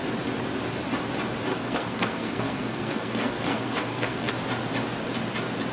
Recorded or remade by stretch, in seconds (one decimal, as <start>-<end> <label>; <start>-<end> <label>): 0.0-1.5 recorded; 1.5-4.3 remade; 4.3-5.7 recorded